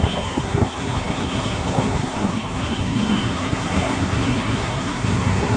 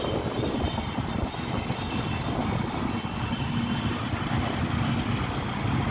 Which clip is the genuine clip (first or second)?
second